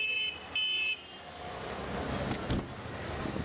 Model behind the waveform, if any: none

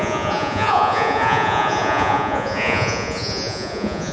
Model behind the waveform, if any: vocoder, Vocos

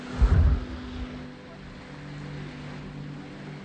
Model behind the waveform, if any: none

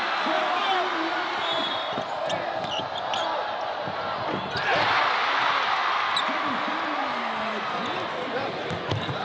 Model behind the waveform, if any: none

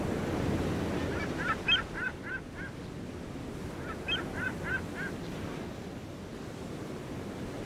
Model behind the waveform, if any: none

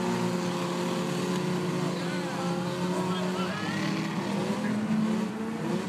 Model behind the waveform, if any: none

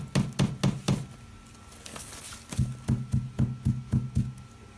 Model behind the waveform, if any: none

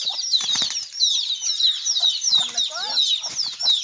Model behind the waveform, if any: none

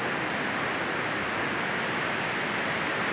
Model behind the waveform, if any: none